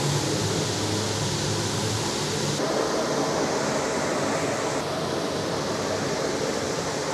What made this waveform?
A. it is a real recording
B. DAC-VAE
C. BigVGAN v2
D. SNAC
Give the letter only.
A